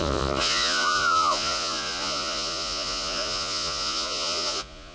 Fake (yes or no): yes